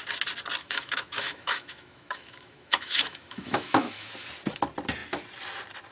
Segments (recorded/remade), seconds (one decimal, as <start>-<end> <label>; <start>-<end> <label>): 0.0-0.6 recorded; 0.6-4.1 remade; 4.1-5.9 recorded